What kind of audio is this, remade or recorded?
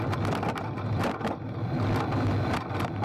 recorded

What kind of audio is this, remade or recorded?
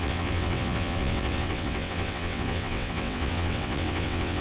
remade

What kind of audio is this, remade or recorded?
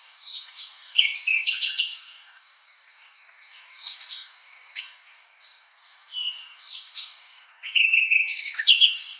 remade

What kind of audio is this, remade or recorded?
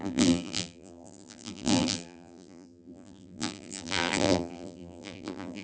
remade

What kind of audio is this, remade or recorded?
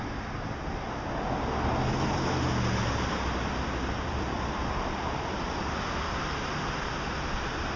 recorded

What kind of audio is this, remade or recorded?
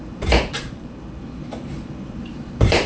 remade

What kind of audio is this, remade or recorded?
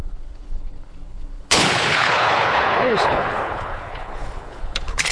remade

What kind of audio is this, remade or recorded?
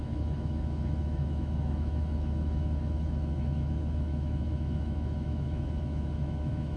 remade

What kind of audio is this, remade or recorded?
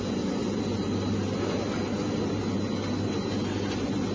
recorded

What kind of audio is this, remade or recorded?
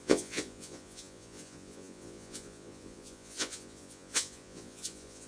remade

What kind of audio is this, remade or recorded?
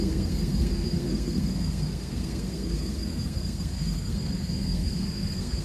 remade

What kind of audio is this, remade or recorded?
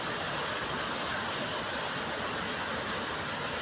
recorded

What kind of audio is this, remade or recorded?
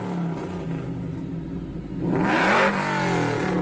recorded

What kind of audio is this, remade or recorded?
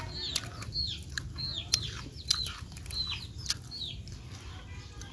recorded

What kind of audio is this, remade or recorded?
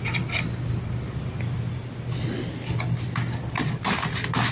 recorded